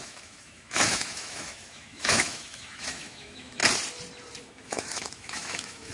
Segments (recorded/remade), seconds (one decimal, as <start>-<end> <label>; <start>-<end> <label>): 0.0-3.6 remade; 3.6-4.4 recorded; 4.4-5.9 remade

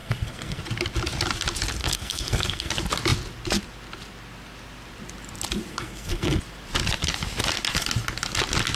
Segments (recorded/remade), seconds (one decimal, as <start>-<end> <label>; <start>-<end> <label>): 0.0-0.6 remade; 0.6-1.8 recorded; 1.8-2.7 remade; 2.7-5.7 recorded; 5.7-6.4 remade; 6.4-8.8 recorded

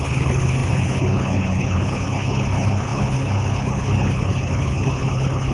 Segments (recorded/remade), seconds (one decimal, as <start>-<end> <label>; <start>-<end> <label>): 0.0-5.5 remade

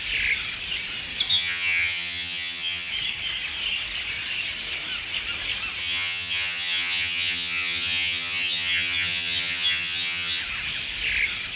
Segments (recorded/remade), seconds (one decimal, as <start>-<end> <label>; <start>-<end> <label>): 0.0-1.3 recorded; 1.3-2.9 remade; 2.9-5.8 recorded; 5.8-10.4 remade; 10.4-11.6 recorded

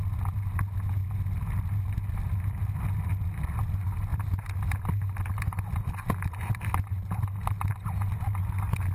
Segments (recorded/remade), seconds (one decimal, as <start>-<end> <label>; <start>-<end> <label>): 0.0-8.9 recorded